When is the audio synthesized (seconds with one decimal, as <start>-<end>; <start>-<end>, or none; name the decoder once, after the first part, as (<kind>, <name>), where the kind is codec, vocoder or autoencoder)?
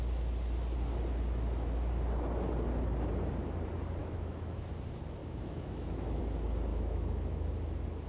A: 4.0-4.7 (autoencoder, DAC-VAE); 5.2-6.2; 6.7-7.5